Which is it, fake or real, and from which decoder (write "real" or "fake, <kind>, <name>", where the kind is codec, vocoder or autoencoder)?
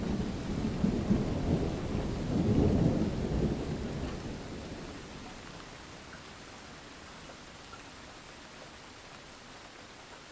real